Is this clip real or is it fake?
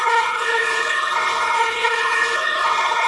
fake